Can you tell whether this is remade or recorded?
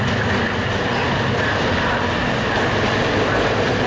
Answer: recorded